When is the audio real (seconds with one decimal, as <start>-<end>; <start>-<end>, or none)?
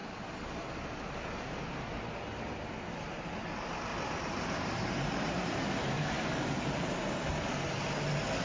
0.0-3.9; 7.2-8.4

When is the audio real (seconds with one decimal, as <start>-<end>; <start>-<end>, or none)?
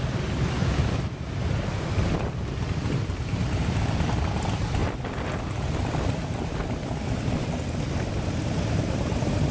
4.8-8.6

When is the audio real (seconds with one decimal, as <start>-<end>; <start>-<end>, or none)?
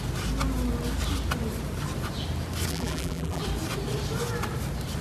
0.0-2.7; 3.4-5.0